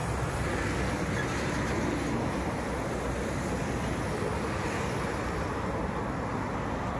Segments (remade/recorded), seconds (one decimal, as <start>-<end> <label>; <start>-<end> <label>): 0.0-7.0 recorded